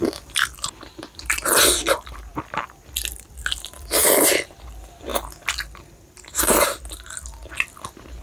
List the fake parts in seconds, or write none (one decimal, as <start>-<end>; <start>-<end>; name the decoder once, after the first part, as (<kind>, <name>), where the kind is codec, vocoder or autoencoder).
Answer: 0.0-2.3 (vocoder, BigVGAN v2); 3.1-5.1